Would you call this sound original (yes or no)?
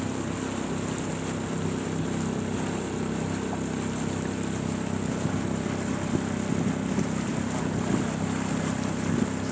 yes